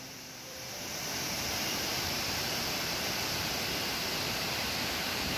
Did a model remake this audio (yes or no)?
yes